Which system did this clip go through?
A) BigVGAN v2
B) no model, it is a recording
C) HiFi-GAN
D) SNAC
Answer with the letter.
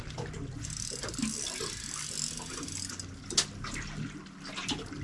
B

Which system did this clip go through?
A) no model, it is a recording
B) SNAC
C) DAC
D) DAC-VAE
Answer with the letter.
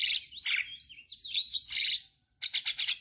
A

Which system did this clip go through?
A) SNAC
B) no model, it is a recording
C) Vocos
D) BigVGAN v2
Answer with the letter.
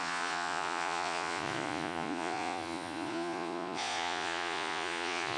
C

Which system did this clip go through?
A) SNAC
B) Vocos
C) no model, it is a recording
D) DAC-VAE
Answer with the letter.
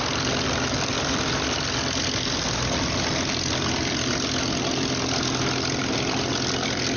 C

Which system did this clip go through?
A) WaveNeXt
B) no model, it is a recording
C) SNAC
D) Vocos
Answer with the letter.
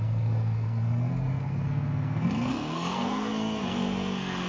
C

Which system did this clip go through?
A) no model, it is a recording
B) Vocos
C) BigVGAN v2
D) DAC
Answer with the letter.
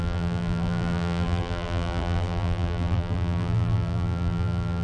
C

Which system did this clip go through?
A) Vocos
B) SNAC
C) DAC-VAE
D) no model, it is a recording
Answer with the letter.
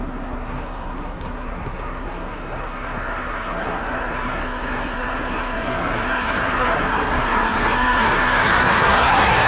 B